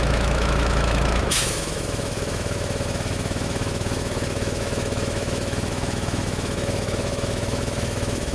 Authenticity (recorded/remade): remade